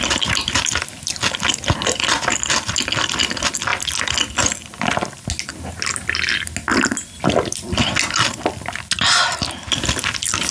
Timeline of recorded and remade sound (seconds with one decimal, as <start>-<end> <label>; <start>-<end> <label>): 0.0-10.5 recorded